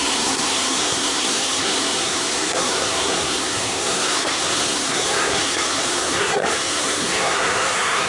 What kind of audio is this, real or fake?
fake